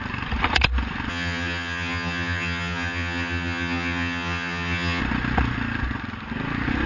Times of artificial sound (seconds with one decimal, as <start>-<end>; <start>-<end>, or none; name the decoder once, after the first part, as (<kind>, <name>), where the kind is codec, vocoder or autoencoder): 1.1-5.0 (vocoder, HiFi-GAN)